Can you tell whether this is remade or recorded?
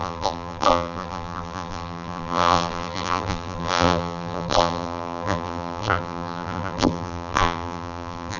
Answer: remade